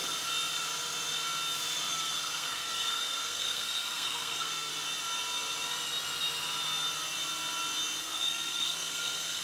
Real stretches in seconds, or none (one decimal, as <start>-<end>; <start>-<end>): 0.0-1.9; 4.7-8.0